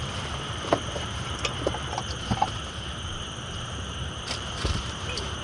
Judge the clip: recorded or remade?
remade